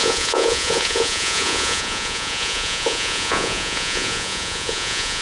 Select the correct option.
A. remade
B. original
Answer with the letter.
A